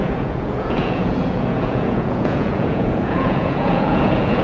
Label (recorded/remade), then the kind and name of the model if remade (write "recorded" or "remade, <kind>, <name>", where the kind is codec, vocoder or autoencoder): remade, vocoder, Vocos